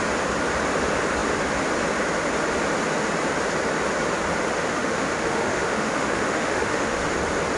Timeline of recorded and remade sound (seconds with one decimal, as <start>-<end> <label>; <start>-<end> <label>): 0.0-4.6 recorded; 4.6-7.0 remade; 7.0-7.6 recorded